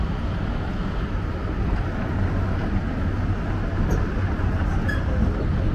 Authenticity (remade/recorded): recorded